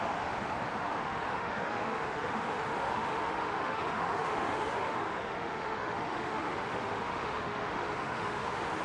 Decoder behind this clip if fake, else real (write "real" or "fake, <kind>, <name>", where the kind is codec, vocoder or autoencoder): fake, autoencoder, DAC-VAE